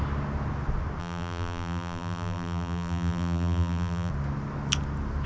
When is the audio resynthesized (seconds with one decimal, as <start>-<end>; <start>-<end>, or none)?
1.0-4.1